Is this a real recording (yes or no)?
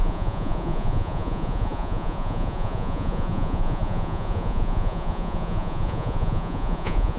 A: no